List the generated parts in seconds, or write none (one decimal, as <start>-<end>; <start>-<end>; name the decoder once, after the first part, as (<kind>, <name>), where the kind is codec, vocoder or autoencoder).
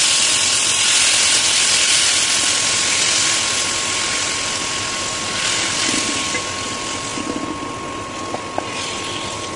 none